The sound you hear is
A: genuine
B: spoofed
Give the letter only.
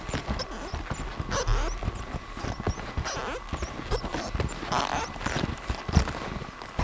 A